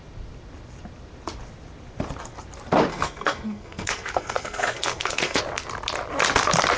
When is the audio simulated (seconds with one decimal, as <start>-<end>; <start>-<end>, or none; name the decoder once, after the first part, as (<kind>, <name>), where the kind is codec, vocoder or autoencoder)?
2.9-5.4 (codec, SNAC)